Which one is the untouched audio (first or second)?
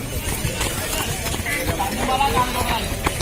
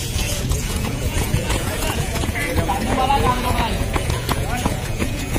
first